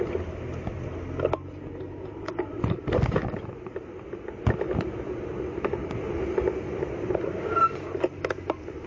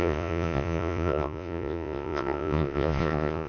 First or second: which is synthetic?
second